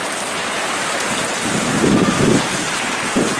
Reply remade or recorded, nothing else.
remade